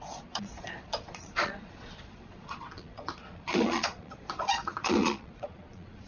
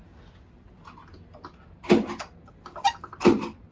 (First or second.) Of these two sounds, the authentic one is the second